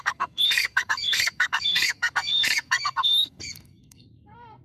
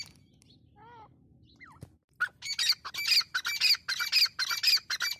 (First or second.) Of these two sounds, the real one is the second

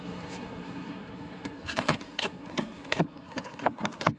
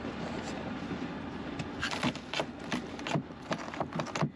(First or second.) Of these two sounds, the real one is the second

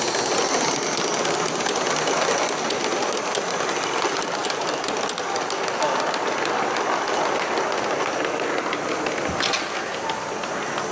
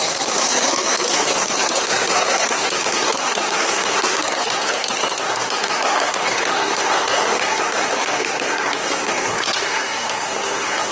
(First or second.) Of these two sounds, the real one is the first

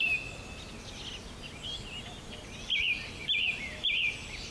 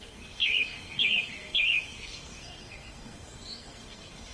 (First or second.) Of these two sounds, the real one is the first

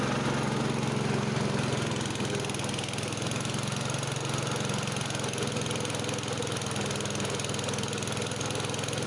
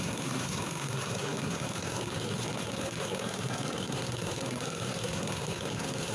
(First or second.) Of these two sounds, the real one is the first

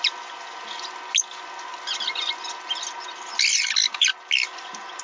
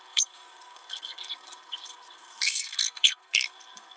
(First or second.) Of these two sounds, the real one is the first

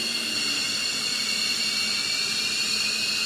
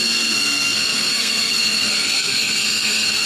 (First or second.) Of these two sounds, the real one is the first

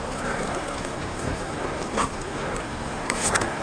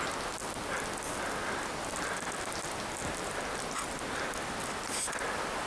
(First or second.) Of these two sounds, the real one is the second